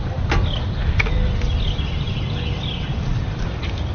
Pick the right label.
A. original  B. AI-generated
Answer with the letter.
A